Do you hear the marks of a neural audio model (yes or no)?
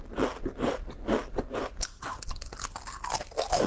no